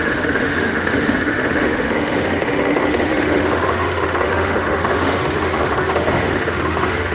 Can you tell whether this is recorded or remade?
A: remade